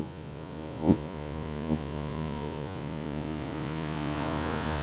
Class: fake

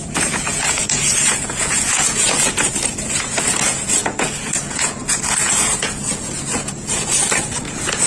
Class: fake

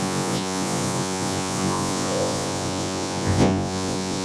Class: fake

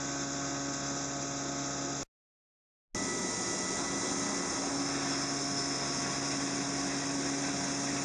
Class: real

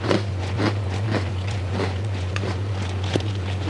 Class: fake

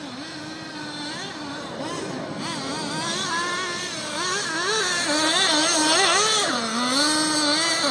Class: real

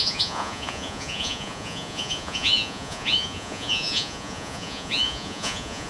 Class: fake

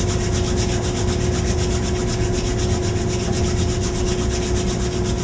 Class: real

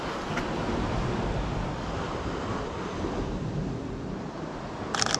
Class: real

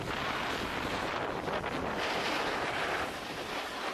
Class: real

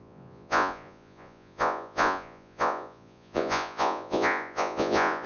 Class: fake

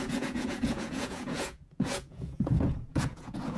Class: fake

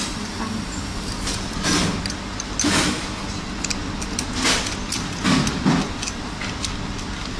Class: real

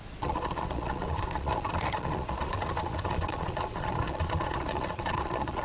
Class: fake